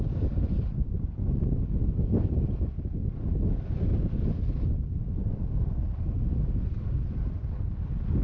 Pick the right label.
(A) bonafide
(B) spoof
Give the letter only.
A